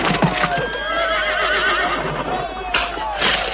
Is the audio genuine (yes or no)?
yes